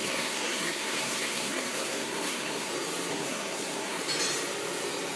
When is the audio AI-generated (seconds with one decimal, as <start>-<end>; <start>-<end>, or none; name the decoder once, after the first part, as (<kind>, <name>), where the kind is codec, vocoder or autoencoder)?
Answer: 0.0-2.7 (codec, SNAC); 3.1-4.0